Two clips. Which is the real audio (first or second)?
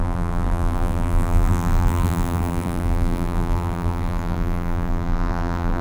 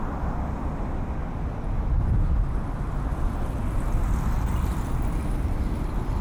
second